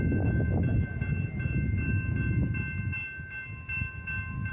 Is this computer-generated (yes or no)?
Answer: no